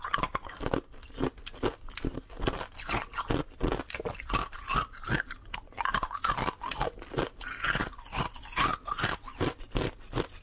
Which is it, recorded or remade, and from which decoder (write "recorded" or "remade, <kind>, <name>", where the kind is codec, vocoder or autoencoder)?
recorded